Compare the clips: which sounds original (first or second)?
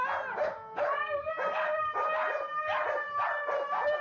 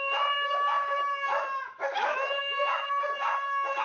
first